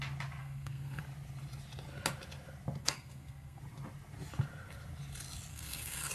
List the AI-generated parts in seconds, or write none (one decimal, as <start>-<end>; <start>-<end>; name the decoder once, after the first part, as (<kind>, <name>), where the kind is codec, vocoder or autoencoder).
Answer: 0.4-1.0 (codec, SNAC); 2.8-3.6; 5.5-6.1